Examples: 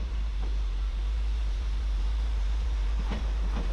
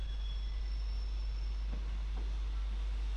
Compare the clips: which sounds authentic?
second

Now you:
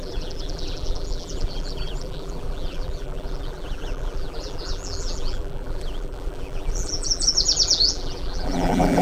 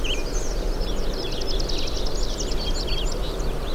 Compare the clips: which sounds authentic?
second